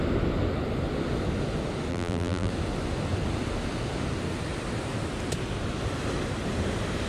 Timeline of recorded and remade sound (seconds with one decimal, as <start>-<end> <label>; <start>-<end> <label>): 0.0-1.9 recorded; 1.9-2.5 remade; 2.5-7.1 recorded